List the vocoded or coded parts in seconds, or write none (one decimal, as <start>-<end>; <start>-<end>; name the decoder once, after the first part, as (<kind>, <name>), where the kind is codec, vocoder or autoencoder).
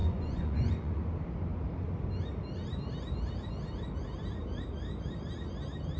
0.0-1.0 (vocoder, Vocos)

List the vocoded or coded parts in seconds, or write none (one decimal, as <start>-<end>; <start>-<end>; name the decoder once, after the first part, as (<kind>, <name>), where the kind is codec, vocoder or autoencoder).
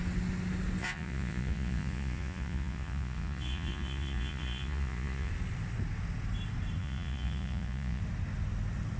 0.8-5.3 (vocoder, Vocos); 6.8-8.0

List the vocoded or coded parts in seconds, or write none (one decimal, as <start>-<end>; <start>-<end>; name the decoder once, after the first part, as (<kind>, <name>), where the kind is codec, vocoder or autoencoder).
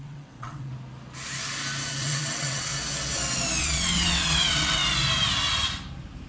0.0-0.7 (vocoder, WaveNeXt); 1.9-2.7; 3.6-4.8